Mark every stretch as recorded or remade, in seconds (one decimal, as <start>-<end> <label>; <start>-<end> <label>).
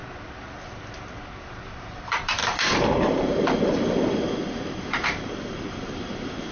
0.0-1.8 recorded; 1.8-6.5 remade